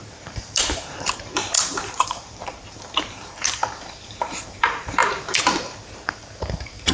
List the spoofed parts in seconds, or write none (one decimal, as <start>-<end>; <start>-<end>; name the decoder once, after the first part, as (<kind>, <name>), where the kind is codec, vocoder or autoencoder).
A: 0.0-6.9 (vocoder, BigVGAN v2)

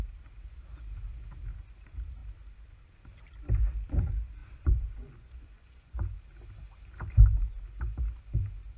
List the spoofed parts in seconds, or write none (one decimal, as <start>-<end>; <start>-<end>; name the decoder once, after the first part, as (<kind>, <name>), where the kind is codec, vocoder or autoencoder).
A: 4.4-6.2 (vocoder, Vocos)

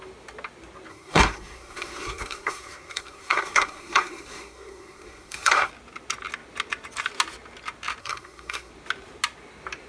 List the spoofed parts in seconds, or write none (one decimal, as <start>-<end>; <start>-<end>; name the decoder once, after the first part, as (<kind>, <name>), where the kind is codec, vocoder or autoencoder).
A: 0.9-5.7 (codec, SNAC); 8.0-8.7